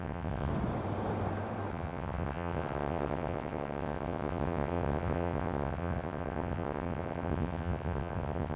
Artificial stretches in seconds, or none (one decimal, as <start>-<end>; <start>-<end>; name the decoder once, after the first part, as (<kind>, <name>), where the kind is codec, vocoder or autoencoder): 0.0-0.5 (vocoder, WaveNeXt); 1.7-8.6